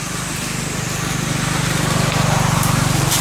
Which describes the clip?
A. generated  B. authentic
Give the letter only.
A